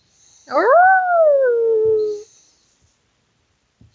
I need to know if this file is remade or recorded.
recorded